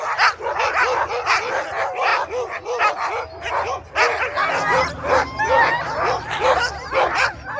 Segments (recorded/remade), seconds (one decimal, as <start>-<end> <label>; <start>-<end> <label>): 0.0-7.6 recorded